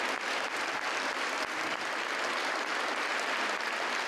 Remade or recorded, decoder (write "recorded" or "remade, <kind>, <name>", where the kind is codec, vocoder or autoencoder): recorded